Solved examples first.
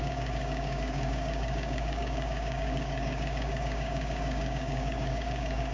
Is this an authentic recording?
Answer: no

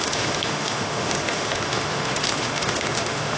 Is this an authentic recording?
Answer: no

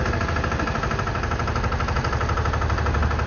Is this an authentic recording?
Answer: yes